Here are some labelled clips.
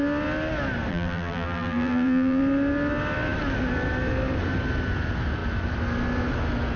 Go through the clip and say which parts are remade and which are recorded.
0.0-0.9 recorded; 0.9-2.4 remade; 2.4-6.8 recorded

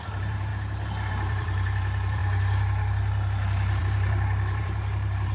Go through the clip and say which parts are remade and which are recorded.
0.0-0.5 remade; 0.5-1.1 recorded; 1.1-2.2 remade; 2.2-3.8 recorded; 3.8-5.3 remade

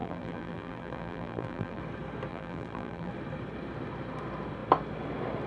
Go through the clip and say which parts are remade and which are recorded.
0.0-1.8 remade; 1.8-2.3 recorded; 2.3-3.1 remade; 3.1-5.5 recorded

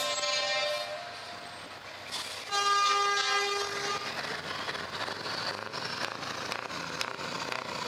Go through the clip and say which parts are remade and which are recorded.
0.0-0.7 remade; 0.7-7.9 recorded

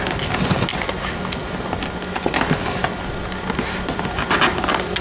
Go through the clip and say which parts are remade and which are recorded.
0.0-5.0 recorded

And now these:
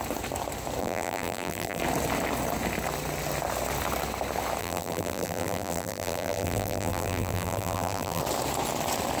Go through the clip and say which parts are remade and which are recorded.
0.0-0.8 recorded; 0.8-1.8 remade; 1.8-4.6 recorded; 4.6-8.2 remade; 8.2-9.2 recorded

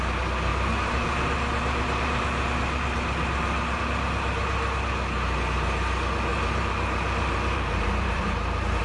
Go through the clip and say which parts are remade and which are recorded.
0.0-0.5 recorded; 0.5-3.8 remade; 3.8-6.3 recorded; 6.3-8.8 remade